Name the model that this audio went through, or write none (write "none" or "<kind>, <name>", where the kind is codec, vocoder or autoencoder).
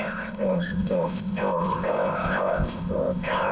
codec, ZipCodec